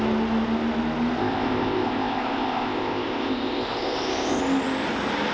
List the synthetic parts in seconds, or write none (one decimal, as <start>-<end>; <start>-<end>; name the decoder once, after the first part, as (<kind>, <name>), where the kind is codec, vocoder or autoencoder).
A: 1.2-4.4 (codec, ZipCodec)